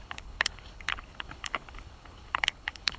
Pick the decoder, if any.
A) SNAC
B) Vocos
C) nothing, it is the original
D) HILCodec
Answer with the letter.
D